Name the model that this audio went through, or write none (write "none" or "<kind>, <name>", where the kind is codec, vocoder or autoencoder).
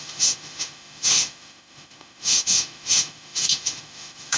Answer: autoencoder, DAC-VAE